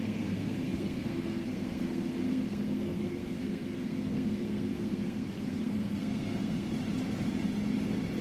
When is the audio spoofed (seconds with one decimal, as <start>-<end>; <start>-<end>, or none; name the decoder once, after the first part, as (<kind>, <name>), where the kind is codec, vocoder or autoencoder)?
0.0-6.7 (codec, SNAC)